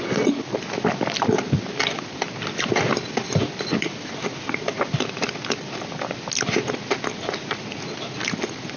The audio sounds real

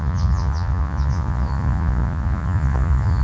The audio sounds fake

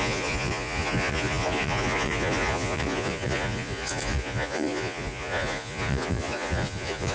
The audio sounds fake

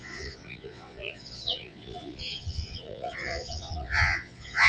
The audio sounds fake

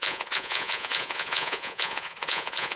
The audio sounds fake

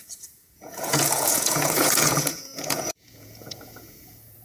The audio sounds fake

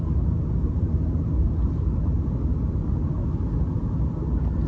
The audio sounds real